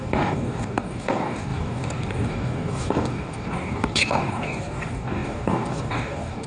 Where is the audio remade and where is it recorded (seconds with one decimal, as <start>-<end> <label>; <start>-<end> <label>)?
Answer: 0.0-6.5 remade